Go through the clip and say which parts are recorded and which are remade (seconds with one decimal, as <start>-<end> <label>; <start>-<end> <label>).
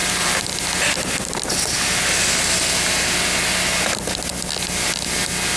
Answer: 0.0-5.6 recorded